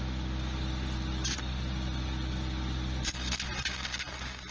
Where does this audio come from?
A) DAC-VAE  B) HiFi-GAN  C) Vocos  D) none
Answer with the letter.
D